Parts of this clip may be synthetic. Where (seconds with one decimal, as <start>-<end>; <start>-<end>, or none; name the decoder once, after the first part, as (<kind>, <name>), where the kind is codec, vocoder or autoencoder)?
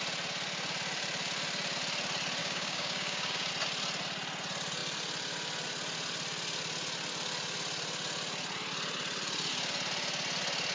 2.4-3.5 (codec, DAC)